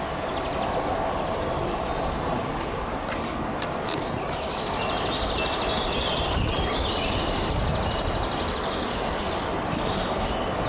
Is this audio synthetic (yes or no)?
no